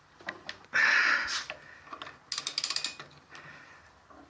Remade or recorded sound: recorded